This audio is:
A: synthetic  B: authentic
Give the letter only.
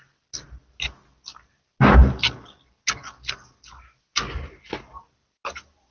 B